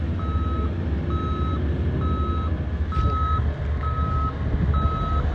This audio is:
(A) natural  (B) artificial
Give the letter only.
A